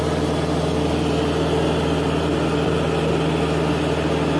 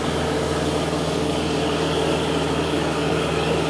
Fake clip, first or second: second